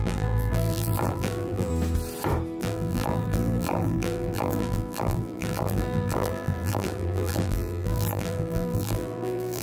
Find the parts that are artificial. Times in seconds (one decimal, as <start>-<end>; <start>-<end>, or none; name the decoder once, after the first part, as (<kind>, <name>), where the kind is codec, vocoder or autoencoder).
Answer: 0.0-1.7 (vocoder, BigVGAN v2); 2.6-9.6